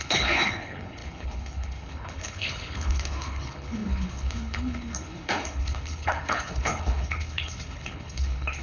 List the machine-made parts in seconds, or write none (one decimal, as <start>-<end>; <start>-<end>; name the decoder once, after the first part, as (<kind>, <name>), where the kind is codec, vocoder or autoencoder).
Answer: 0.0-8.6 (codec, HILCodec)